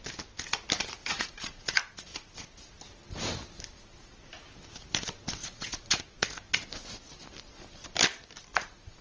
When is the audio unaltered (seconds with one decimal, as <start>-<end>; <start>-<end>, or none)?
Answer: 0.0-1.0; 1.7-5.4; 6.0-8.5